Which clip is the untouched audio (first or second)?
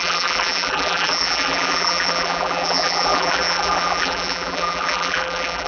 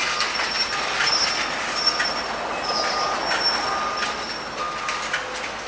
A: second